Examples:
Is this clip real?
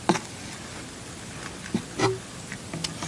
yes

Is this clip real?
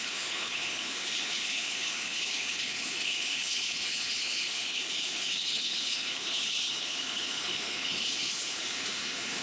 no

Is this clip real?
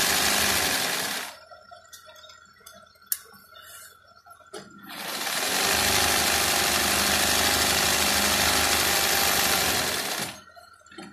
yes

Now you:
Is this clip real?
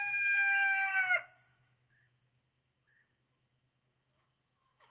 no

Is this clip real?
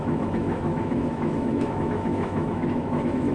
no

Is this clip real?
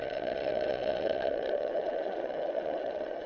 no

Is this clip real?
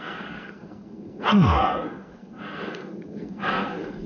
no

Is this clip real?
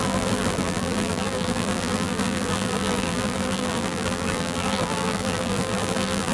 no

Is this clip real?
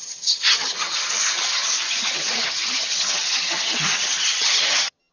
no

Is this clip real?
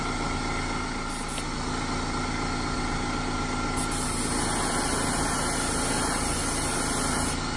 yes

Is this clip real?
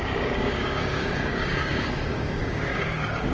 no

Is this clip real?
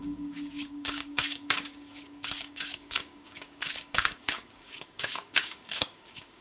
no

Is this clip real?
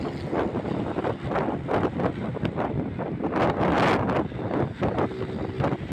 yes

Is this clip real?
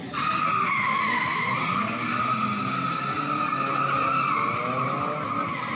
yes